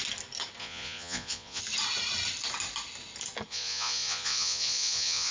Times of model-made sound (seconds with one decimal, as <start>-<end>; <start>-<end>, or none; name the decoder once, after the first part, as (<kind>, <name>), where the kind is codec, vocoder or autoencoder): 0.6-1.6 (vocoder, Vocos); 3.5-5.3